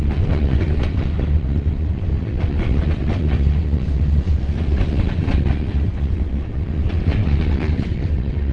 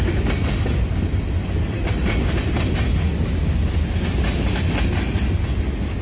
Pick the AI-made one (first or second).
first